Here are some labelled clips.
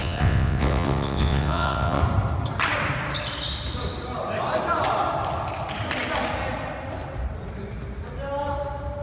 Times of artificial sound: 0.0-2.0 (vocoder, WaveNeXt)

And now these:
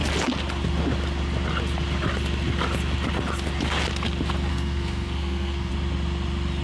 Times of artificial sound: 4.5-5.7 (codec, SNAC)

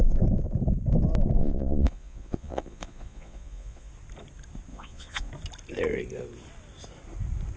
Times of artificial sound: 1.4-3.9 (vocoder, Vocos); 4.7-5.3